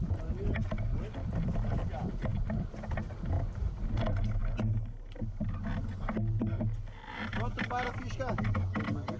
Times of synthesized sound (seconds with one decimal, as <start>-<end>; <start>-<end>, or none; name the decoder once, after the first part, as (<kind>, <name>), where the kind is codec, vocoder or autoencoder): none